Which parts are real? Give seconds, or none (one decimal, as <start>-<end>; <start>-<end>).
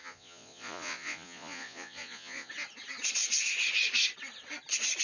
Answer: 2.5-5.0